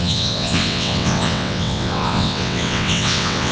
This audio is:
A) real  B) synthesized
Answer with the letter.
B